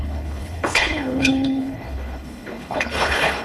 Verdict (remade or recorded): remade